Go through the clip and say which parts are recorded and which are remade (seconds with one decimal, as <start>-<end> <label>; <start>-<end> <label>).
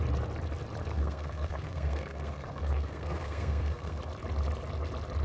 0.0-0.9 recorded; 0.9-4.0 remade; 4.0-5.2 recorded